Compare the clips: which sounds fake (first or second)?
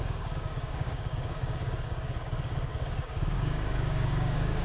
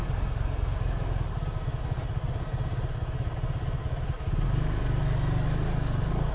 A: first